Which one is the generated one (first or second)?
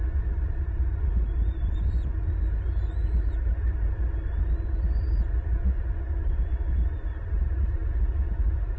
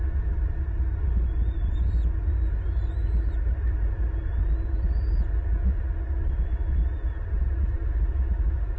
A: first